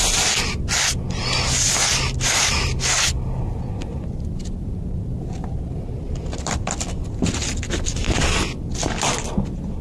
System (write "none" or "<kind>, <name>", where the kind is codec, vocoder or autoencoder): none